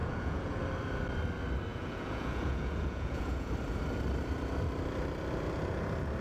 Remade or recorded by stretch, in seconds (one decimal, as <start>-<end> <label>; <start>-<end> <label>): 0.0-0.6 remade; 0.6-1.7 recorded; 1.7-3.5 remade; 3.5-6.2 recorded